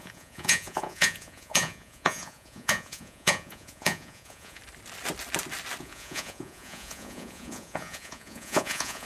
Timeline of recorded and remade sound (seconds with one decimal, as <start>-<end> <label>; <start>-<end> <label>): 0.0-4.6 remade; 4.6-5.8 recorded; 5.8-9.1 remade